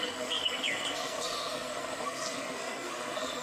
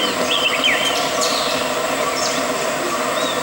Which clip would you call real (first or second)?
second